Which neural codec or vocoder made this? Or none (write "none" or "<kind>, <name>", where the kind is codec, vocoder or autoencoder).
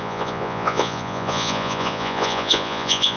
vocoder, Vocos